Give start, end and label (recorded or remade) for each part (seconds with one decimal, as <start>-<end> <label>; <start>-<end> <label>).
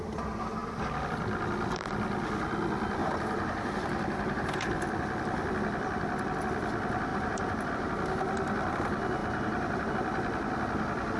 0.0-3.0 recorded; 3.0-4.7 remade; 4.7-7.1 recorded; 7.1-7.7 remade; 7.7-9.2 recorded; 9.2-9.9 remade; 9.9-11.2 recorded